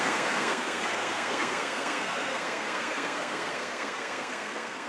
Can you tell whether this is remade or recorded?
remade